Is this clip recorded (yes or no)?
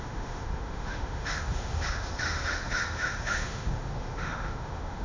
no